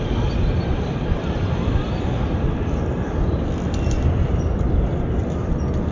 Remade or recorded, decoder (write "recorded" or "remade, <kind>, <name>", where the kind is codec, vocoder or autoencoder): recorded